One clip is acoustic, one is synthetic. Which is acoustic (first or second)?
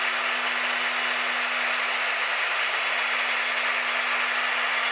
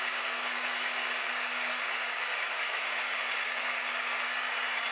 first